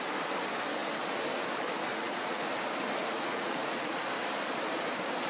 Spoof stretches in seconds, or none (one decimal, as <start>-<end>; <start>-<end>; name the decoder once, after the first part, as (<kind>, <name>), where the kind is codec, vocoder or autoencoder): 1.9-2.4 (vocoder, Vocos); 3.0-4.0